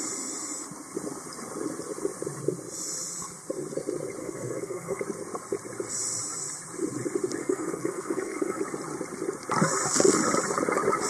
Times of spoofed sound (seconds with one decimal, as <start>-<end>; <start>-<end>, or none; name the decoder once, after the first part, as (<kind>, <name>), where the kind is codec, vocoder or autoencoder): 4.2-5.0 (codec, SNAC); 7.4-8.6